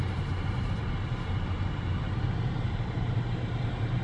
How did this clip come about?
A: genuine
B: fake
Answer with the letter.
B